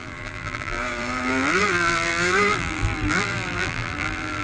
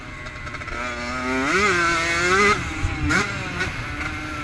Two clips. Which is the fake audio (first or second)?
first